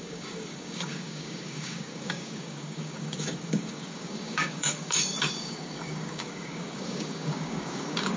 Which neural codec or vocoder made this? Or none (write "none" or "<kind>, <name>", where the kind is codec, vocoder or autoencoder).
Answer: codec, DAC